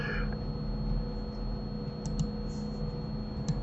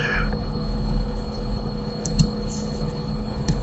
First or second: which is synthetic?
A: second